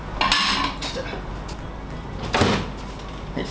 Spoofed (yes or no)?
no